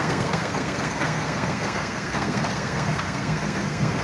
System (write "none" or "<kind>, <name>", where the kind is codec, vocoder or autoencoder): codec, SNAC